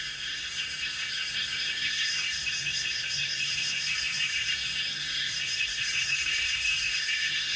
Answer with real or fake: fake